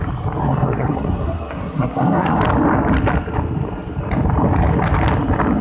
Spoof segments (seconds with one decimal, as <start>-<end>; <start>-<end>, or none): 0.4-2.4

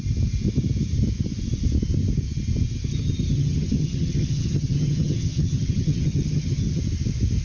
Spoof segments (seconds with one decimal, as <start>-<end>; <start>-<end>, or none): 2.9-6.8

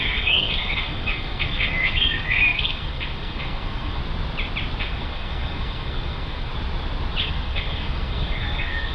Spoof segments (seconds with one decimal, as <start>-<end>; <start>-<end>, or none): 0.0-4.0; 4.8-6.5; 7.2-8.9